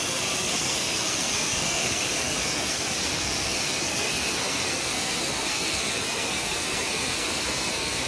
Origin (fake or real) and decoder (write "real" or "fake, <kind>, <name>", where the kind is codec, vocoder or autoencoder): fake, codec, SNAC